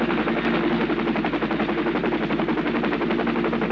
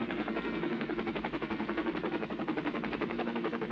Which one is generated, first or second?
second